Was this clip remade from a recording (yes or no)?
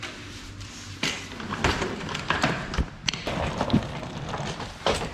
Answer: yes